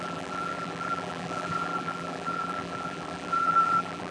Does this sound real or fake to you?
fake